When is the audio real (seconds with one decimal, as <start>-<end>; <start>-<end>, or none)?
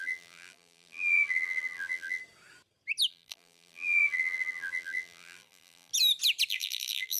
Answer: 2.2-3.1; 5.9-6.5